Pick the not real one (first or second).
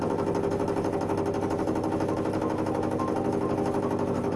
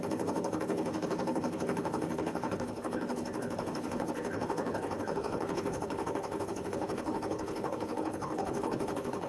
second